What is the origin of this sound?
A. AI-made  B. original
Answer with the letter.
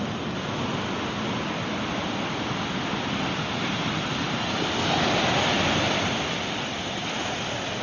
B